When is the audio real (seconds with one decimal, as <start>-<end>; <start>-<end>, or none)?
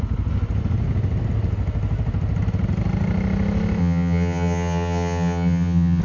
0.0-3.8